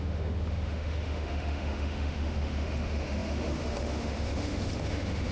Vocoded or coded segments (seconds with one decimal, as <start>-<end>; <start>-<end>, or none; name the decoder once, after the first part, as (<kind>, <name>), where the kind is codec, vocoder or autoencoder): 0.0-5.3 (autoencoder, DAC-VAE)